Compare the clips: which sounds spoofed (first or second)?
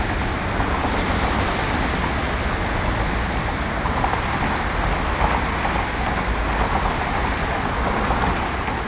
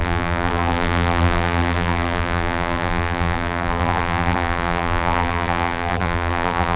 second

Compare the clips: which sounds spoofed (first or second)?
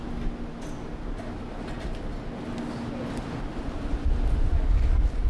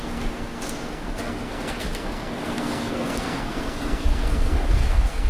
second